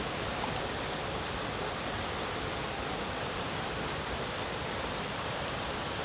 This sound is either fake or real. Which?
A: real